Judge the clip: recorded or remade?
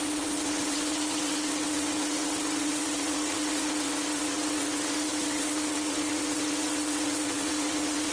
remade